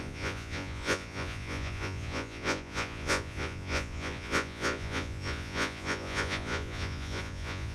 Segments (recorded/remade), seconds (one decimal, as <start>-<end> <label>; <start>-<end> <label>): 0.0-7.7 remade